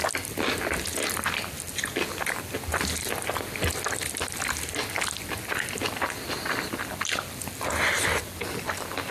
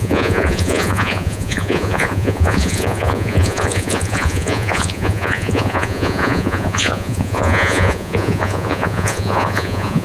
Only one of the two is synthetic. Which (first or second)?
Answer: second